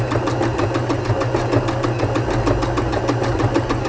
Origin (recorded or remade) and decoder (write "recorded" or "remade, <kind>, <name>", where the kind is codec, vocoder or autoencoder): recorded